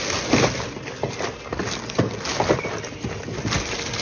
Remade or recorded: recorded